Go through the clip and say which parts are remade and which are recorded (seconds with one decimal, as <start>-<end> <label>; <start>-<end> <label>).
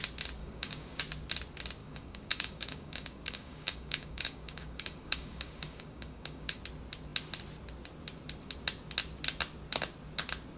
0.0-0.4 recorded; 0.4-1.0 remade; 1.0-1.8 recorded; 1.8-6.6 remade; 6.6-10.6 recorded